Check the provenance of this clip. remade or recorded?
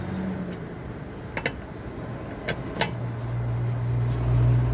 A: recorded